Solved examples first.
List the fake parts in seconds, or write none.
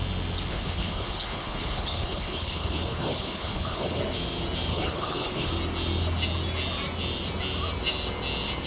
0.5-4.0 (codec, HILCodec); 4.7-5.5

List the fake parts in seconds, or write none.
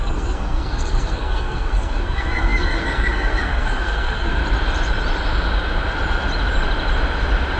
0.0-4.4 (codec, SNAC)